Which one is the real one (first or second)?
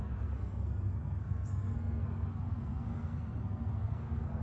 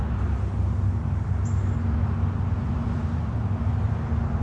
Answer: second